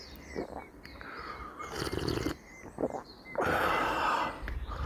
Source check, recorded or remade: recorded